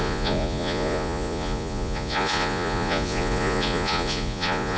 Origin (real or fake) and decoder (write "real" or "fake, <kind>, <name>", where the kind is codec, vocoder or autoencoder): fake, vocoder, Vocos